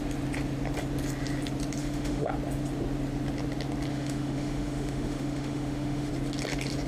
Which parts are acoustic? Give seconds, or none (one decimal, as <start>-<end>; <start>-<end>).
0.0-1.8; 2.3-3.9; 6.1-6.9